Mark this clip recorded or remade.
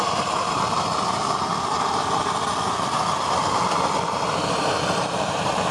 recorded